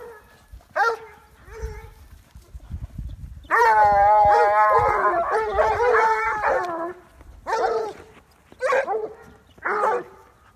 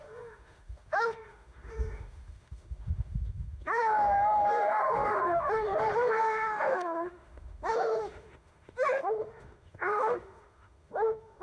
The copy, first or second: second